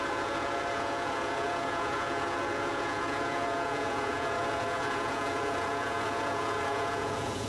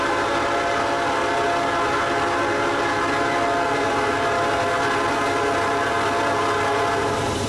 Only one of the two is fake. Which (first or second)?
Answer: first